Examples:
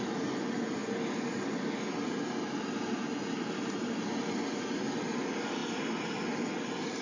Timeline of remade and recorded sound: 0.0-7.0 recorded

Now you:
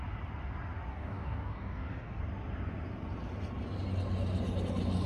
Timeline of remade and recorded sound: 0.0-0.9 recorded; 0.9-2.2 remade; 2.2-5.1 recorded

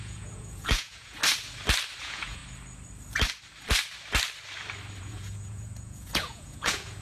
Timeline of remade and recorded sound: 0.0-1.2 remade; 1.2-2.0 recorded; 2.0-2.4 remade; 2.4-5.0 recorded; 5.0-7.0 remade